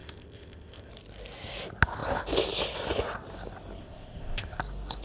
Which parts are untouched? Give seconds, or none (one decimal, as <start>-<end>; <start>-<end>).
0.9-3.8; 4.6-5.0